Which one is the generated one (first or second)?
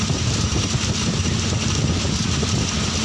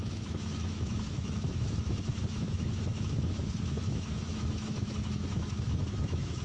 second